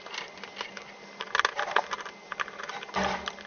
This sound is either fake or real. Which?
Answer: real